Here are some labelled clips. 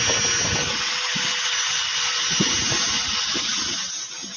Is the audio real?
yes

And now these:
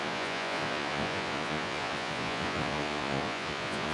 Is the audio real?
no